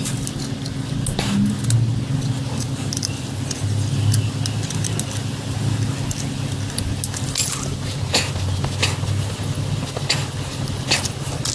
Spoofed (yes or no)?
no